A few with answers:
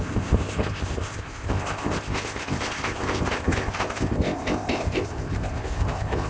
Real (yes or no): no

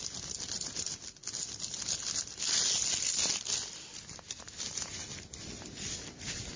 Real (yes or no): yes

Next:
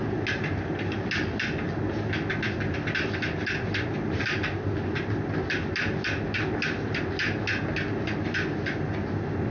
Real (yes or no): yes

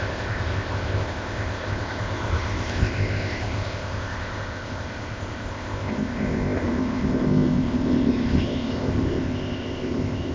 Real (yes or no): no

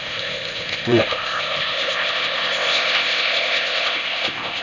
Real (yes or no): no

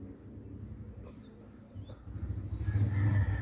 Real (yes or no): yes